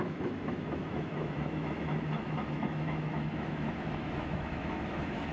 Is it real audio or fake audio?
fake